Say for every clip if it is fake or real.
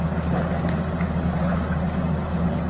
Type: real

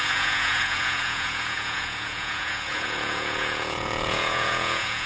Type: fake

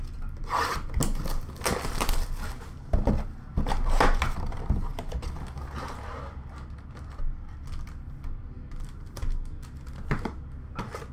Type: real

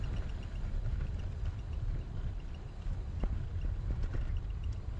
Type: real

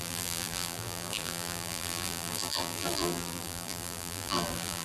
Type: fake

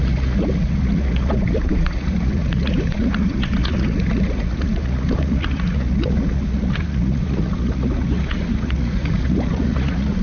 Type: fake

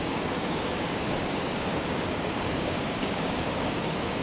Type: fake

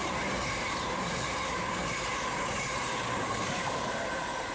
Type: fake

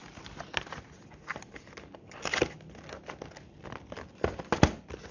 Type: real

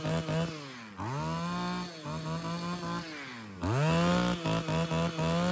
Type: real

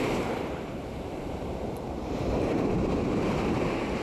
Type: fake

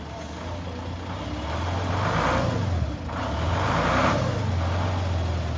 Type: real